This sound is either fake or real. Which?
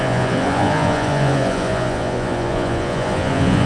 fake